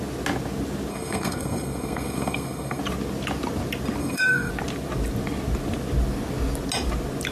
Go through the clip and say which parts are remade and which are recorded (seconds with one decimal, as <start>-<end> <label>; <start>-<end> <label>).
0.0-0.9 recorded; 0.9-2.8 remade; 2.8-4.0 recorded; 4.0-4.5 remade; 4.5-7.3 recorded